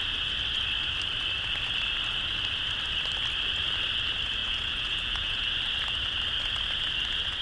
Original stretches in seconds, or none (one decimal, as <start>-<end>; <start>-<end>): 0.0-4.4; 5.5-7.4